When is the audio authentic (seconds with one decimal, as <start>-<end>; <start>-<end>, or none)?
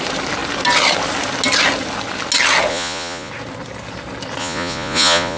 0.0-2.7; 3.3-4.4